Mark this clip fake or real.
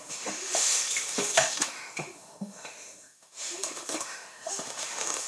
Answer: fake